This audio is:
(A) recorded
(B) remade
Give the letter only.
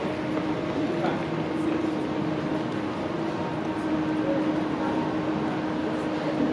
A